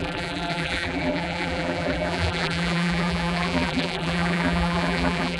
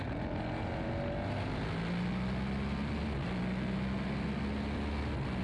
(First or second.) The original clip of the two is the second